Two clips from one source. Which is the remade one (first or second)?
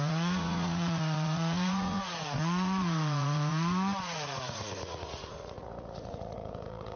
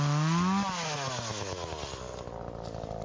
first